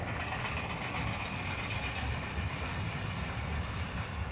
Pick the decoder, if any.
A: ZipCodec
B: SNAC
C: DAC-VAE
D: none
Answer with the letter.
D